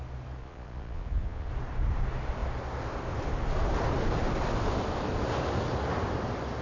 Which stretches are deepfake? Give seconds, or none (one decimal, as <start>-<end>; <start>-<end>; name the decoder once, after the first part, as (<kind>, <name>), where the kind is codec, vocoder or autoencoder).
0.4-1.5 (vocoder, Vocos)